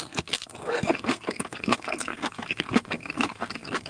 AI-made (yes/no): yes